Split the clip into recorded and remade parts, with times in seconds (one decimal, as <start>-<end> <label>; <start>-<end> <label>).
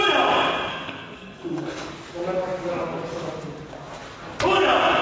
0.0-0.7 recorded; 0.7-1.9 remade; 1.9-5.0 recorded